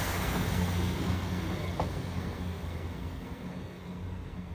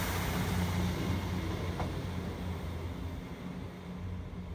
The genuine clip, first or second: second